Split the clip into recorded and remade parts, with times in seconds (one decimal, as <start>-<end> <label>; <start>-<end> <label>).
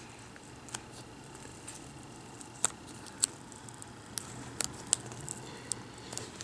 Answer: 0.0-6.4 recorded